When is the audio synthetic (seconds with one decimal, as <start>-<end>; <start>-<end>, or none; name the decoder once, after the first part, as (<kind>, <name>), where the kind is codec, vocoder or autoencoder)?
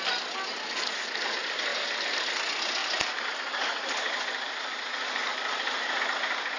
1.7-2.3 (vocoder, BigVGAN v2); 2.8-6.0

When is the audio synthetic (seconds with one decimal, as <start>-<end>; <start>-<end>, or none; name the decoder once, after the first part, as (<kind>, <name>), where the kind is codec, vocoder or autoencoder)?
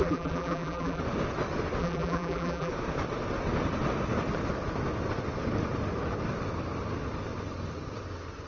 0.0-1.0 (vocoder, BigVGAN v2); 1.8-2.7